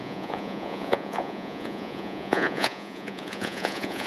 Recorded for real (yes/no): no